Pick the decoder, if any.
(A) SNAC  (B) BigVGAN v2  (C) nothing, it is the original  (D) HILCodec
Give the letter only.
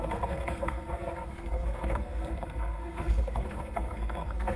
A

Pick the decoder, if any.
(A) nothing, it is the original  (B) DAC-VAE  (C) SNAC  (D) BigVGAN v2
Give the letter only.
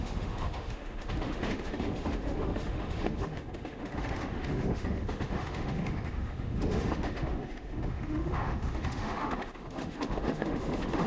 B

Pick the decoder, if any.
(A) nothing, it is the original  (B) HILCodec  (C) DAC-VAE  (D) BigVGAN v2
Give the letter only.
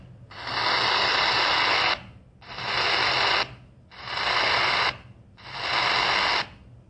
A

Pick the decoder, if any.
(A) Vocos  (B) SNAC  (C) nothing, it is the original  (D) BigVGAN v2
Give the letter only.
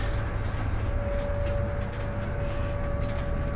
C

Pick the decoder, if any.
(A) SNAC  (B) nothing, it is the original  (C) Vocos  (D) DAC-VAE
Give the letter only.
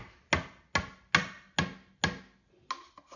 B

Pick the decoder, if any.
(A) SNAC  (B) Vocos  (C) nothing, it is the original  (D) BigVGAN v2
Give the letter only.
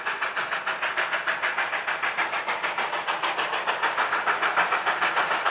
C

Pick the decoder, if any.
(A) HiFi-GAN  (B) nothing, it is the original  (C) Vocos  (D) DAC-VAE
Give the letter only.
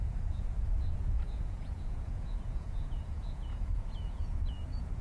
C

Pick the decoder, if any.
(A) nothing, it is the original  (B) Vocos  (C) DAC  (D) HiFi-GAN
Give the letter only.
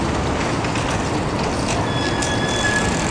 A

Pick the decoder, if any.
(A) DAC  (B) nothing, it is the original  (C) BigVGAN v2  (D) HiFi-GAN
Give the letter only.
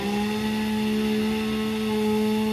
B